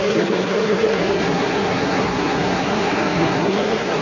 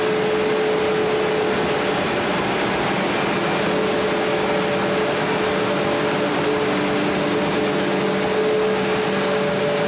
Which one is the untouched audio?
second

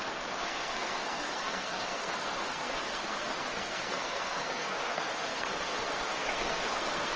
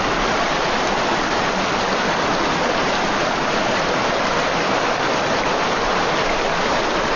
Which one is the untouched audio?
second